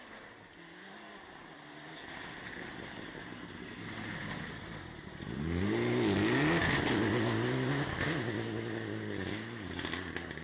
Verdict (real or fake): real